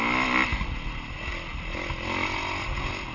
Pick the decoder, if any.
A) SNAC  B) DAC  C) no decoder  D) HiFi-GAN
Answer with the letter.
C